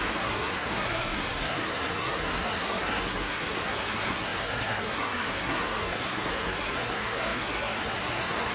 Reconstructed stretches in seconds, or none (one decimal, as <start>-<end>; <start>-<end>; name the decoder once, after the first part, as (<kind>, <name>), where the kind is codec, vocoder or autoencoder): 0.0-8.5 (codec, SNAC)